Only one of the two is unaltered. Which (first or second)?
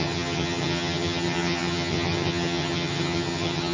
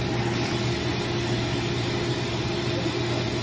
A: second